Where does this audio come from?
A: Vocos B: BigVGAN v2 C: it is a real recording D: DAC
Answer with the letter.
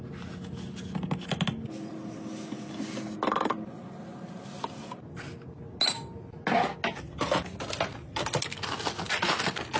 C